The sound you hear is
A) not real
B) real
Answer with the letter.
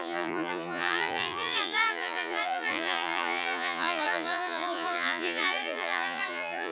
A